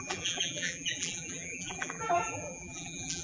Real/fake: fake